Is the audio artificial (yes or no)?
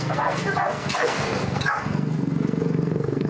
yes